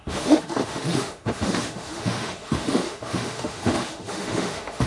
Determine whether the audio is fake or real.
fake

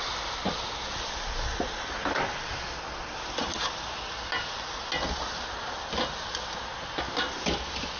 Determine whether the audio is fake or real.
real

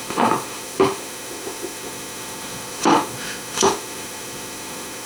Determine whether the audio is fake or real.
fake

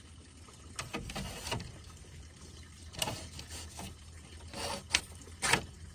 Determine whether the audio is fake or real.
real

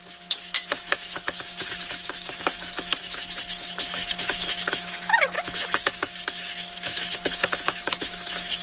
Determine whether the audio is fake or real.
fake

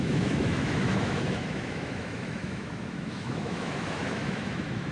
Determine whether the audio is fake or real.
fake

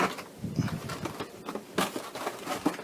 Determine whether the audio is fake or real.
real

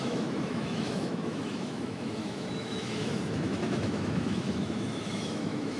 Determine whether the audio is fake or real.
fake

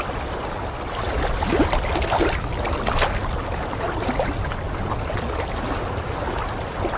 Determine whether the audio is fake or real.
real